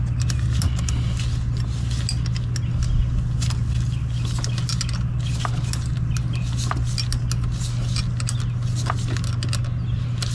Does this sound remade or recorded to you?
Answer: recorded